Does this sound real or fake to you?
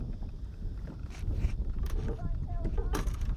fake